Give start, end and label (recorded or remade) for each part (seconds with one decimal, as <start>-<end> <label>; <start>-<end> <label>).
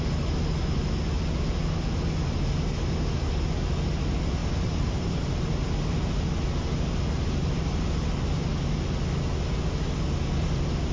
0.0-4.4 recorded; 4.4-6.3 remade; 6.3-10.9 recorded